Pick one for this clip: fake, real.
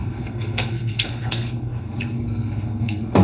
fake